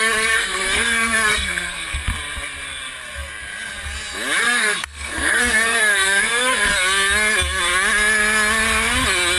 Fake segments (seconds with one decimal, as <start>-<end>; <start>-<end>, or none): 0.0-2.1; 4.4-6.7